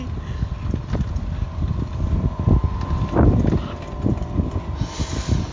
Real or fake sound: real